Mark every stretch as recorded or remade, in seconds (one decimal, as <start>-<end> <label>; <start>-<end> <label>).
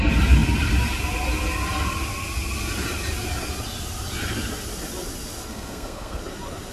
0.0-5.5 recorded; 5.5-6.2 remade; 6.2-6.7 recorded